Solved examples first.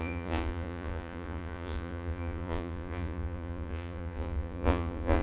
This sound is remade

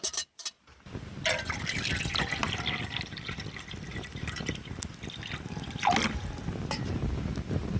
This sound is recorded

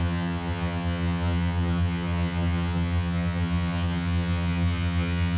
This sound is remade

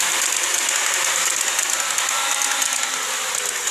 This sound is recorded